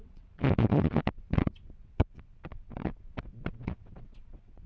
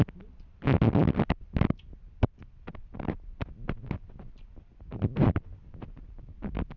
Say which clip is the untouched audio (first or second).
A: second